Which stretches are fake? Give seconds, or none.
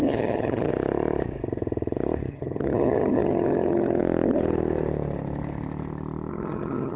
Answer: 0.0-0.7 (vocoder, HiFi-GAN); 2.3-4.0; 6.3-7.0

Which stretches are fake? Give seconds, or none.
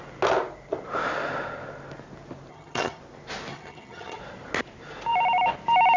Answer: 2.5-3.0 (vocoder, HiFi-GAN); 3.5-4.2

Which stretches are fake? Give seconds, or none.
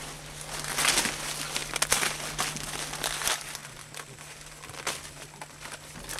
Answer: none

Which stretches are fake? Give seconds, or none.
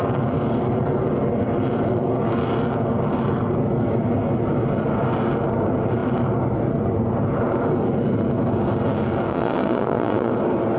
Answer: 9.3-10.3 (vocoder, WaveNeXt)